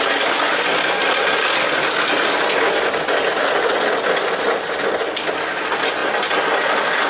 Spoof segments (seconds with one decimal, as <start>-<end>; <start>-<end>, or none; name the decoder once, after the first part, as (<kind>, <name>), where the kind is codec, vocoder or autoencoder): none